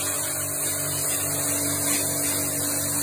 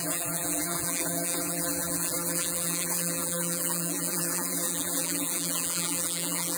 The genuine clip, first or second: first